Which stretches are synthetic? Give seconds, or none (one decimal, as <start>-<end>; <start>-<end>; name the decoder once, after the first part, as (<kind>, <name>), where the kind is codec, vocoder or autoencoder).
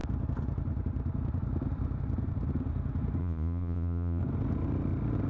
3.2-4.2 (vocoder, Vocos)